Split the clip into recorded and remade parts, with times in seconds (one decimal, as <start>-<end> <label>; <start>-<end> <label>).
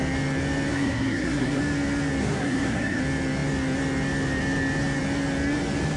0.0-0.7 recorded; 0.7-1.6 remade; 1.6-2.2 recorded; 2.2-3.0 remade; 3.0-6.0 recorded